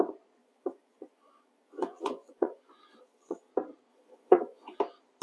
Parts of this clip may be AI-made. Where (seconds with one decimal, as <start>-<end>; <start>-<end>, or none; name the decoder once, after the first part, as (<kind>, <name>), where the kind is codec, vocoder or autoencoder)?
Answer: 0.4-3.5 (vocoder, Vocos); 3.9-4.8